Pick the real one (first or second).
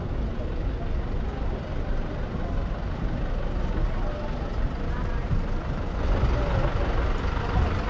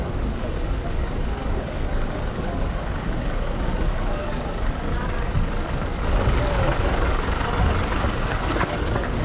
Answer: first